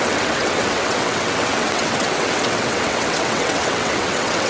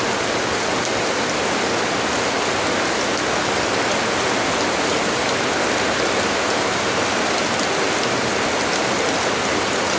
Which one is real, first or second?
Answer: second